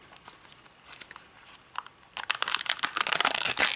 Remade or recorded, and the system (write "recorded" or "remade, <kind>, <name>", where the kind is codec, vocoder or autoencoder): recorded